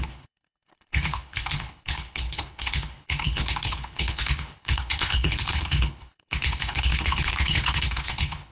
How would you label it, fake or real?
fake